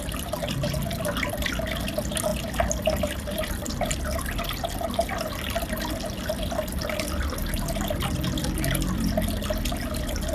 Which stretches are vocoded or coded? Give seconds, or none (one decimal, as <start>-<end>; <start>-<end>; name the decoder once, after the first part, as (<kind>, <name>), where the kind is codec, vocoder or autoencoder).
none